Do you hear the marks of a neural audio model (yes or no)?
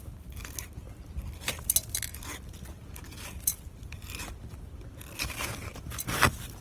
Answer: yes